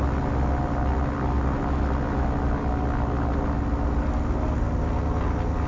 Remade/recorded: recorded